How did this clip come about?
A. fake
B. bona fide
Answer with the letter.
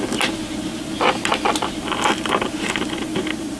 B